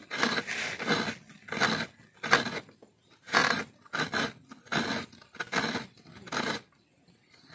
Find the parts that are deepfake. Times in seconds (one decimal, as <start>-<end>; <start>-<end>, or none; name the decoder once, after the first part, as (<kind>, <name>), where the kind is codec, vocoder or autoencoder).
3.0-3.9 (vocoder, BigVGAN v2)